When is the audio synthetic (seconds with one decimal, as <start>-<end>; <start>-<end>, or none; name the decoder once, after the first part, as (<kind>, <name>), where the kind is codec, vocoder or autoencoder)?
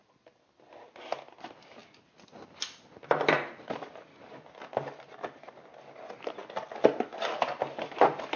none